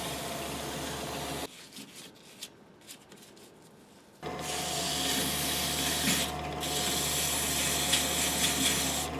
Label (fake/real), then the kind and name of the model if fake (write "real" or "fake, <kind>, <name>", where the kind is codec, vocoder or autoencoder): real